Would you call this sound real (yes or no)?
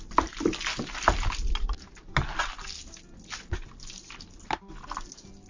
yes